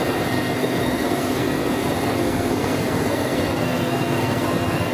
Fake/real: fake